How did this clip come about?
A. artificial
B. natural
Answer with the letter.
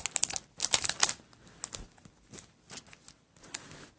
B